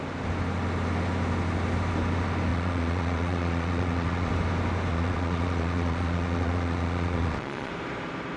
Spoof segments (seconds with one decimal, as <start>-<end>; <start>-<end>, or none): 2.5-4.3; 4.9-7.7